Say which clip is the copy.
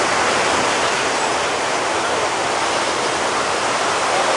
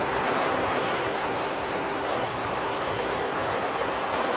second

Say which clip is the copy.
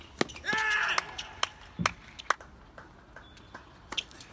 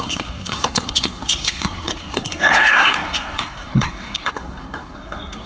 second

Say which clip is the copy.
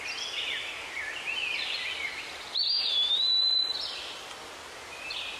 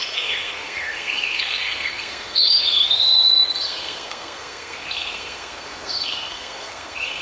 second